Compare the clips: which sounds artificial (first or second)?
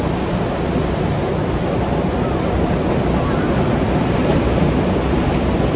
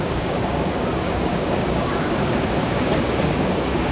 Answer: second